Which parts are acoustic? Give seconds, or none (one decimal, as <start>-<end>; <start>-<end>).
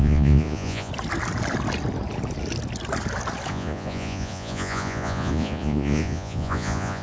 0.9-3.5